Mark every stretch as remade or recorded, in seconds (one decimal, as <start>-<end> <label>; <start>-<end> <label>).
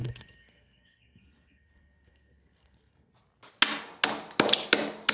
0.0-3.1 remade; 3.1-5.1 recorded